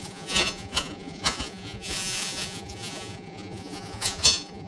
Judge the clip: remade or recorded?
remade